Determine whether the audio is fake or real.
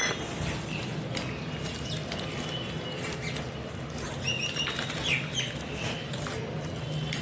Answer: real